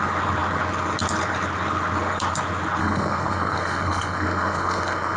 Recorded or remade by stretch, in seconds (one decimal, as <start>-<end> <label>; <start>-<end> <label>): 0.0-2.8 recorded; 2.8-5.2 remade